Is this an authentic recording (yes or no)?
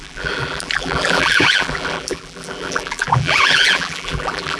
no